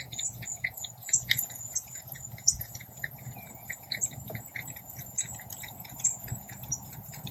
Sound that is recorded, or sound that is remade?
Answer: remade